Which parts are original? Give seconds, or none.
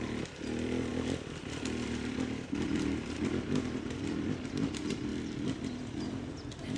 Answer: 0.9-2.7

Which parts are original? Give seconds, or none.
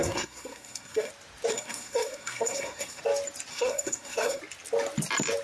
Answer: 1.1-1.5; 3.0-3.5; 4.4-5.4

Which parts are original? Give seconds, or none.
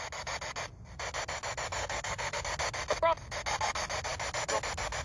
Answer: 0.0-1.8; 2.4-5.0